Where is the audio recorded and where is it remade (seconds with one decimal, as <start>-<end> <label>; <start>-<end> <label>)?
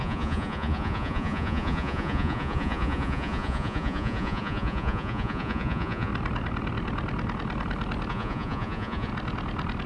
0.0-6.1 remade; 6.1-8.1 recorded; 8.1-9.1 remade; 9.1-9.9 recorded